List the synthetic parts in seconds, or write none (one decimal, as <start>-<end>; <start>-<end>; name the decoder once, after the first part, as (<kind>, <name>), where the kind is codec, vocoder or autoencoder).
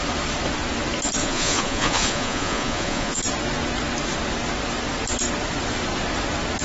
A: 1.2-3.2 (vocoder, Vocos)